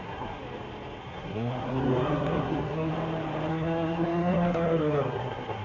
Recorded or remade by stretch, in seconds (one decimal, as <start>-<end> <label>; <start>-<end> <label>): 0.0-0.4 remade; 0.4-1.0 recorded; 1.0-2.9 remade; 2.9-3.5 recorded; 3.5-5.6 remade